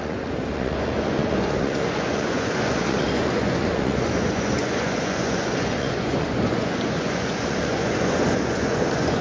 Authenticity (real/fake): fake